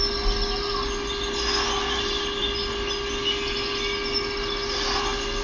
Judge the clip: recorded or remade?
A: recorded